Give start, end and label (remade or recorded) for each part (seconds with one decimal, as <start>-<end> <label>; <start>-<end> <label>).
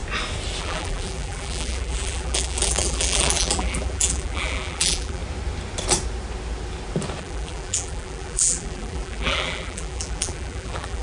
0.0-0.6 recorded; 0.6-5.2 remade; 5.2-7.2 recorded; 7.2-11.0 remade